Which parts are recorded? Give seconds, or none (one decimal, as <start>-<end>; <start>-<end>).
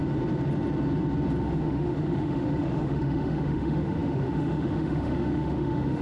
0.0-1.4